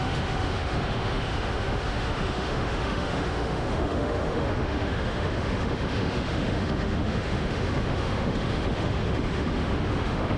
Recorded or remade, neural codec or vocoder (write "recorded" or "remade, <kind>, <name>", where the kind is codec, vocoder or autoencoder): remade, autoencoder, DAC-VAE